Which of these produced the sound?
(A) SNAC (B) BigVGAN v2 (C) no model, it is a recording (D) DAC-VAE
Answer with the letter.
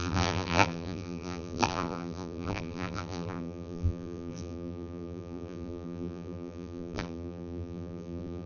B